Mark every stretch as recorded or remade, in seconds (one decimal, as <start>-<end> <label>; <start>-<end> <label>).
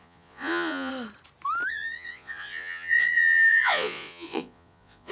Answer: 0.0-0.9 remade; 0.9-1.7 recorded; 1.7-5.1 remade